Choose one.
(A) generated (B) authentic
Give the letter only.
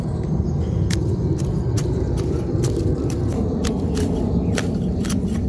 A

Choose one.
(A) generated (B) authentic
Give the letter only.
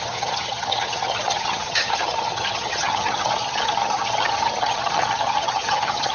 A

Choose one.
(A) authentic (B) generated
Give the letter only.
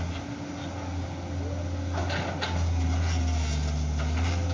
A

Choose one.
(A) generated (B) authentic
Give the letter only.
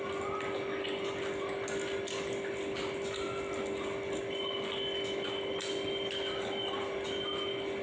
B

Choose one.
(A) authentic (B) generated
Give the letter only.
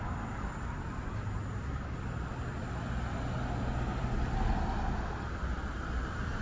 A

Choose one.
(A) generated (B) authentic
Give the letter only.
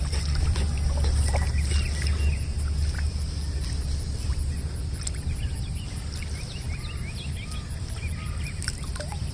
B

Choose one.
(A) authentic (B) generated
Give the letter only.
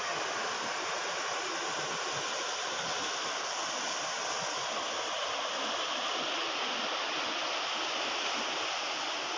A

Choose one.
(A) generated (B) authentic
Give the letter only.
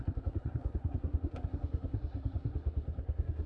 A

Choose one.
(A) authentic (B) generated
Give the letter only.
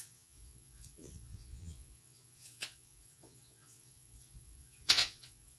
B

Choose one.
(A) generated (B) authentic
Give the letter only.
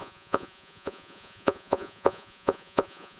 A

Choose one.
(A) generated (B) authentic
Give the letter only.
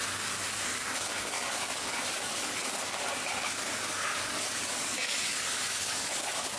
A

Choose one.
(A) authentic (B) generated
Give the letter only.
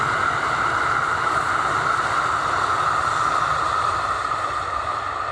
A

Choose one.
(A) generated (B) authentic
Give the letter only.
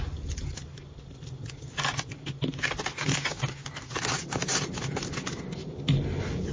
B